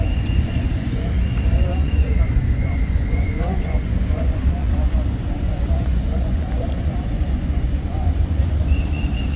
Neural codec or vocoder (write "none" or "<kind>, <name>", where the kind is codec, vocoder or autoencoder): vocoder, Vocos